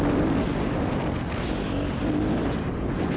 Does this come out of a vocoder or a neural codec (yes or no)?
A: no